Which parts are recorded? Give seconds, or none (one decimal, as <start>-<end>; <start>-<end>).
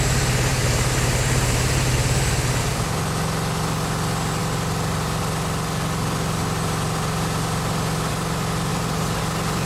0.0-0.5; 2.2-8.7; 9.2-9.7